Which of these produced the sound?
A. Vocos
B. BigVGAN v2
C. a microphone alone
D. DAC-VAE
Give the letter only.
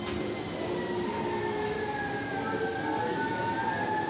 C